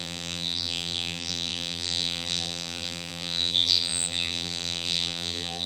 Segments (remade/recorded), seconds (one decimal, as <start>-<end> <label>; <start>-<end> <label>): 0.0-5.7 remade